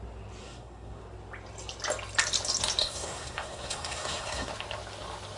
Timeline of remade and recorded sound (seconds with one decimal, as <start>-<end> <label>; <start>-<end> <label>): 0.0-0.4 recorded; 0.4-1.0 remade; 1.0-2.8 recorded; 2.8-4.5 remade; 4.5-5.4 recorded